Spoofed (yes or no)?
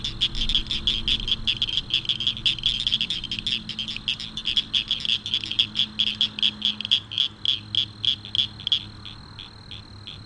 no